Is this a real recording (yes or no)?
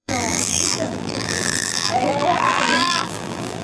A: no